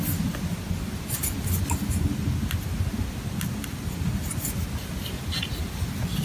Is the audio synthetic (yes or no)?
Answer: no